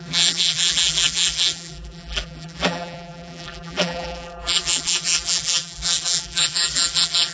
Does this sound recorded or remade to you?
remade